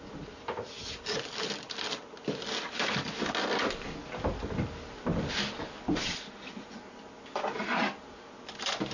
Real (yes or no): yes